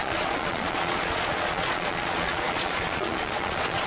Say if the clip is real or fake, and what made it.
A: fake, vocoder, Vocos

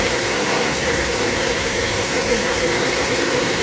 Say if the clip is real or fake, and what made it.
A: fake, codec, SNAC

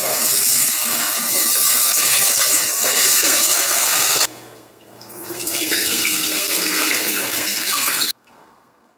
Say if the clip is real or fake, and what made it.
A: fake, codec, SNAC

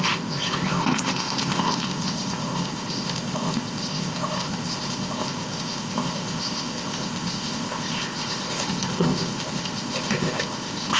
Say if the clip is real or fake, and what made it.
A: fake, codec, ZipCodec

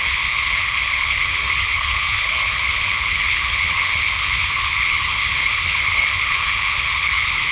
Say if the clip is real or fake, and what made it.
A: fake, codec, HILCodec